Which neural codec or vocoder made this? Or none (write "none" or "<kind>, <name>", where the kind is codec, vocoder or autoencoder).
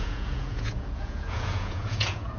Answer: vocoder, Vocos